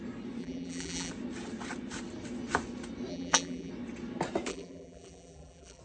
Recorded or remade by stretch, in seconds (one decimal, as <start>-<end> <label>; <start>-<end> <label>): 0.0-0.4 recorded; 0.4-1.1 remade; 1.1-3.1 recorded; 3.1-3.7 remade; 3.7-4.5 recorded; 4.5-5.8 remade